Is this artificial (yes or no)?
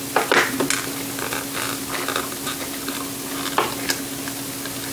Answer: no